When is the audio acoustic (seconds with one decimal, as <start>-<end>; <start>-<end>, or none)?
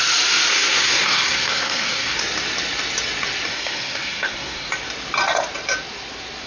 0.0-0.5; 2.2-3.5; 4.7-6.5